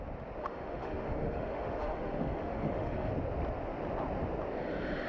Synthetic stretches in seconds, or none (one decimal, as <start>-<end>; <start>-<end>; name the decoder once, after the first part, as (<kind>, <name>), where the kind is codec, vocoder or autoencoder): 0.4-3.1 (autoencoder, DAC-VAE)